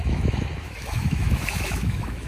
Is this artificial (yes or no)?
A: yes